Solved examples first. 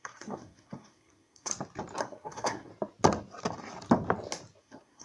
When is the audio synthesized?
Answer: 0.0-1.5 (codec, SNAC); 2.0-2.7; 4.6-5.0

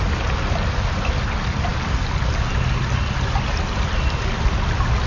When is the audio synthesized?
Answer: none

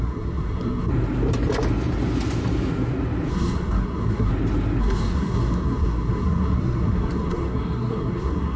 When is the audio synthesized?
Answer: 0.0-0.9 (codec, SNAC); 3.3-4.3; 4.8-8.6

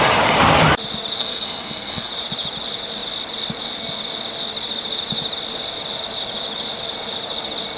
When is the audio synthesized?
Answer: 1.2-2.1 (codec, SNAC)

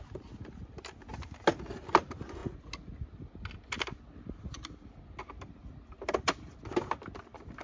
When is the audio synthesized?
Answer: none

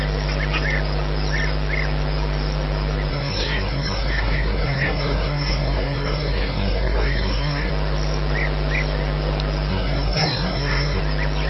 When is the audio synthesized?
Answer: 3.1-7.7 (codec, SNAC); 9.7-11.0

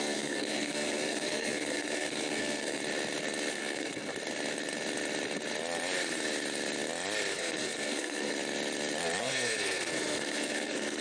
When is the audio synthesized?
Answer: 0.0-2.8 (codec, SNAC); 3.5-4.1; 7.3-8.3; 9.2-11.0

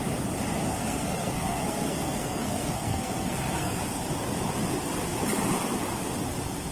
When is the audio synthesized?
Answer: 0.7-3.8 (codec, SNAC)